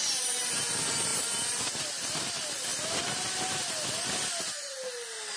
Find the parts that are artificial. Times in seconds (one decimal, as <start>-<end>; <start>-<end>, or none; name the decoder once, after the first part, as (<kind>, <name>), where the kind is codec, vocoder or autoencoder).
none